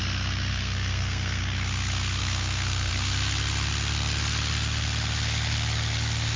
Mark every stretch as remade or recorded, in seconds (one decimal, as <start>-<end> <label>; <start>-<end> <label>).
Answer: 0.0-0.5 recorded; 0.5-1.4 remade; 1.4-2.2 recorded; 2.2-2.9 remade; 2.9-6.4 recorded